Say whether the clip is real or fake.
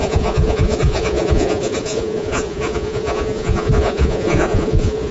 fake